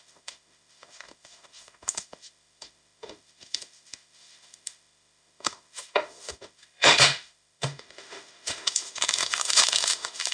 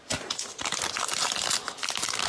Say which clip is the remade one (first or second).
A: first